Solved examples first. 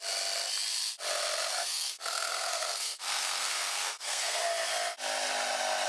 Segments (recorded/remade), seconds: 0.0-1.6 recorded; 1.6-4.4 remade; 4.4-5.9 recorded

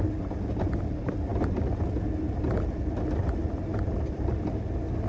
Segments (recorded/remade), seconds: 0.0-5.1 recorded

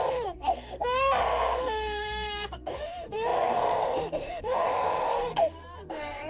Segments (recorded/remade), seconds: 0.0-6.3 remade

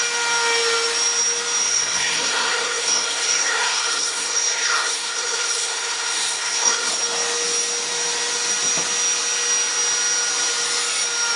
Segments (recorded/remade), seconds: 0.0-1.6 recorded; 1.6-6.9 remade; 6.9-11.4 recorded

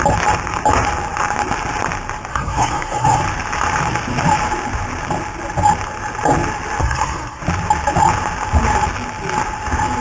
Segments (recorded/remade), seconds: 0.0-2.3 recorded; 2.3-3.2 remade; 3.2-6.8 recorded; 6.8-7.4 remade; 7.4-10.0 recorded

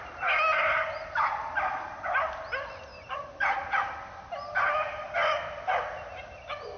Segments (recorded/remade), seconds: 0.0-6.8 recorded